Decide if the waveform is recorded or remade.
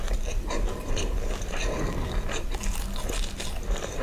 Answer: recorded